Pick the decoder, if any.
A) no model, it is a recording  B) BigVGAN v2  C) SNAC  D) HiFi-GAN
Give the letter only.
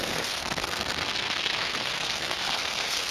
C